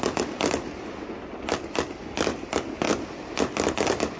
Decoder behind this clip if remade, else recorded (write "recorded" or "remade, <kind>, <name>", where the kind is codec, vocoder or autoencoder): recorded